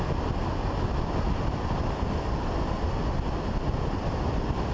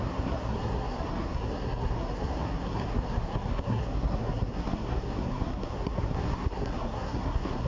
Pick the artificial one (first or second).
second